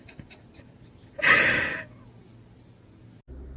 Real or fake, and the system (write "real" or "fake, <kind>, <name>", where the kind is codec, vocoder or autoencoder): real